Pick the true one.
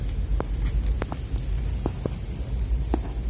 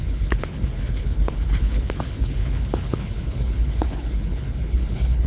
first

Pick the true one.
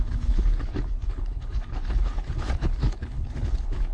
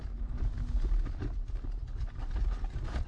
second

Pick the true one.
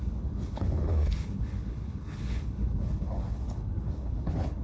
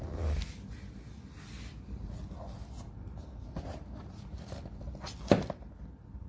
second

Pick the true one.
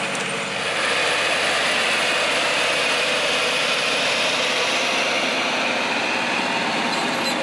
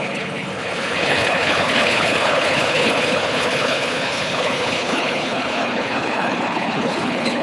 first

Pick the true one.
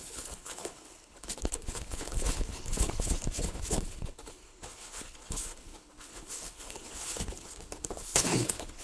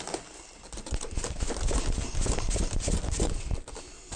second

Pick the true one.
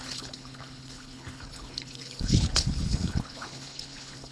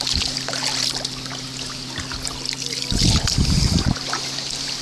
second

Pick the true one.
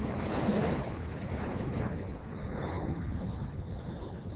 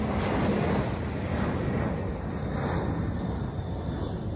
second